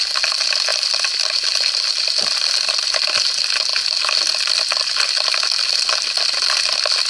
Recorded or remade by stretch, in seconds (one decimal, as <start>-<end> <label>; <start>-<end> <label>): 0.0-7.1 recorded